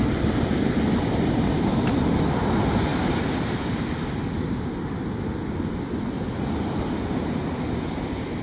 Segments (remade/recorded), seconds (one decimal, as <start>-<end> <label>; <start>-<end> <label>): 0.0-8.4 recorded